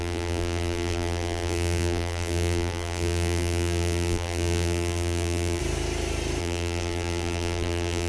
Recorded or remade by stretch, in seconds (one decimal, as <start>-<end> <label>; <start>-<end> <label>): 0.0-5.6 remade; 5.6-6.4 recorded; 6.4-8.1 remade